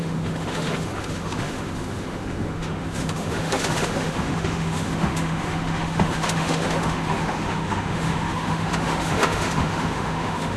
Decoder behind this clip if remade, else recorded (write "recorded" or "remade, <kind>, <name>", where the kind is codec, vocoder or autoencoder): remade, autoencoder, DAC-VAE